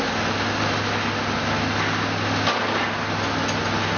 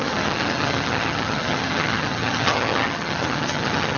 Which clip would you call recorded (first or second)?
first